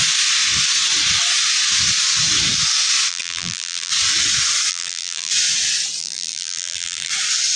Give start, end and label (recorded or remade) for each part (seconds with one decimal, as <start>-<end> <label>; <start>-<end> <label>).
0.0-3.1 recorded; 3.1-3.9 remade; 3.9-4.7 recorded; 4.7-5.3 remade; 5.3-6.0 recorded; 6.0-7.1 remade; 7.1-7.6 recorded